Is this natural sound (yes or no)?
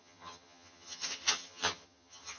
no